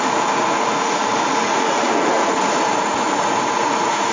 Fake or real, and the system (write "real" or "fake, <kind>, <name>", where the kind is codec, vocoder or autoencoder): fake, vocoder, Vocos